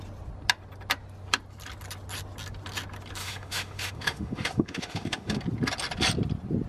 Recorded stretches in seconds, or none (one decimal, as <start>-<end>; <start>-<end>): 0.0-3.2; 5.4-6.7